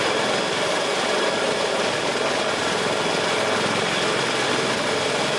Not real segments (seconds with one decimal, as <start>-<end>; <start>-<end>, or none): none